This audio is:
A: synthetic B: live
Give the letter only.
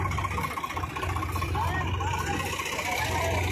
B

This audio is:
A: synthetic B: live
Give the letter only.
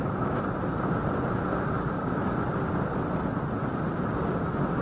B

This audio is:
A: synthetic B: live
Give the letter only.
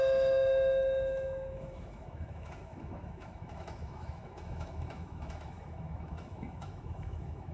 A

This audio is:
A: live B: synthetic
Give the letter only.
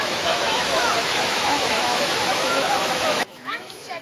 B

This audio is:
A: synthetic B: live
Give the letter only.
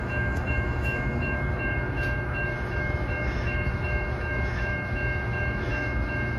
A